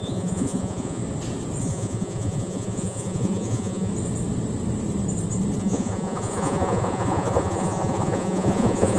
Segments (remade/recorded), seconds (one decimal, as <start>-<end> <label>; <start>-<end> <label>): 0.0-1.0 remade; 1.0-1.6 recorded; 1.6-3.9 remade; 3.9-5.6 recorded; 5.6-9.0 remade

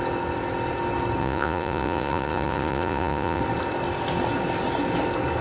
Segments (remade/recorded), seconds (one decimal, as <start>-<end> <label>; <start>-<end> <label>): 0.0-1.2 recorded; 1.2-3.4 remade; 3.4-5.4 recorded

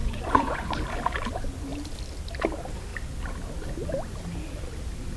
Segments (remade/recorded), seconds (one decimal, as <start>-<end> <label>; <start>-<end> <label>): 0.0-0.7 remade; 0.7-5.2 recorded

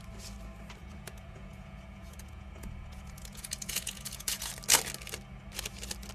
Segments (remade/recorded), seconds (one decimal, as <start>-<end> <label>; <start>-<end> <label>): 0.0-0.8 recorded; 0.8-4.5 remade; 4.5-6.1 recorded

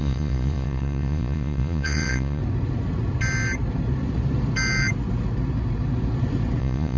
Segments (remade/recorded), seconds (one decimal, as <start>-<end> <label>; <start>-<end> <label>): 0.0-2.4 remade; 2.4-6.6 recorded; 6.6-7.0 remade

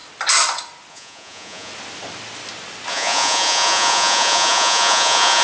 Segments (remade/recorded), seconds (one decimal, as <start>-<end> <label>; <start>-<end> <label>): 0.0-0.9 recorded; 0.9-1.7 remade; 1.7-2.9 recorded; 2.9-5.4 remade

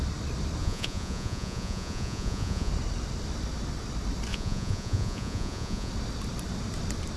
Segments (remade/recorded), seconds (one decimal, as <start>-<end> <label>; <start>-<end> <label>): 0.0-0.6 recorded; 0.6-2.7 remade; 2.7-4.3 recorded; 4.3-5.9 remade; 5.9-7.2 recorded